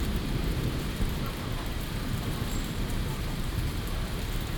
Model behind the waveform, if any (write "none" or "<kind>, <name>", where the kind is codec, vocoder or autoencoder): vocoder, BigVGAN v2